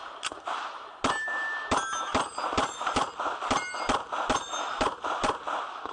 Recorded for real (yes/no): yes